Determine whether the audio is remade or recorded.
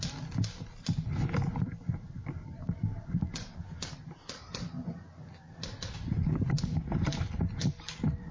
recorded